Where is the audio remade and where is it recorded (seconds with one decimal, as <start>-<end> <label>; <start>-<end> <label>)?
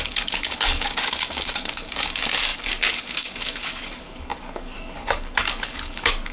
0.0-6.3 remade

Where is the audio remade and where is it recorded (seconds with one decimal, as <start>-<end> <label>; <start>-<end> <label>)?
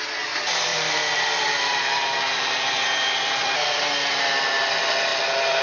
0.0-0.7 recorded; 0.7-2.0 remade; 2.0-3.4 recorded; 3.4-3.9 remade; 3.9-5.6 recorded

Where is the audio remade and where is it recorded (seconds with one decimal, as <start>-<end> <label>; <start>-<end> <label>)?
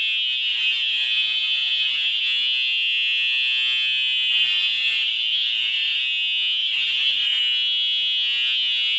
0.0-0.5 recorded; 0.5-2.2 remade; 2.2-4.3 recorded; 4.3-6.0 remade; 6.0-6.6 recorded; 6.6-7.4 remade; 7.4-9.0 recorded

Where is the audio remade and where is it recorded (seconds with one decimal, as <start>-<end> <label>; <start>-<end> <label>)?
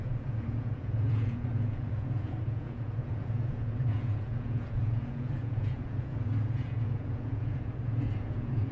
0.0-8.7 remade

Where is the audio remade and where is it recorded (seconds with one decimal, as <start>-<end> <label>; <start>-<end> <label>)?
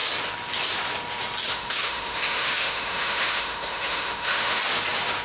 0.0-1.5 recorded; 1.5-4.6 remade; 4.6-5.2 recorded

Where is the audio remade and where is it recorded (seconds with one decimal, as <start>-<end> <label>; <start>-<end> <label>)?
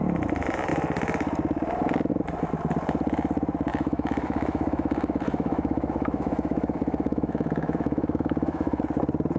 0.0-3.7 recorded; 3.7-8.8 remade; 8.8-9.4 recorded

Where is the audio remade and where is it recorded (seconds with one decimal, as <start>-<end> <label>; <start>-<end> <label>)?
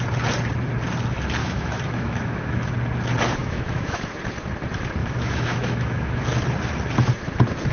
0.0-1.4 recorded; 1.4-2.7 remade; 2.7-3.4 recorded; 3.4-4.0 remade; 4.0-5.0 recorded; 5.0-6.2 remade; 6.2-7.7 recorded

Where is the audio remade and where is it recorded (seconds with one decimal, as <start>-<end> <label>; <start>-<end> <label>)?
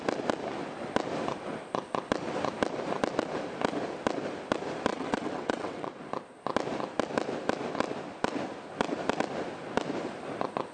0.0-4.9 recorded; 4.9-6.0 remade; 6.0-10.7 recorded